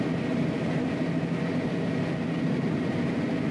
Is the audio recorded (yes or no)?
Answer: yes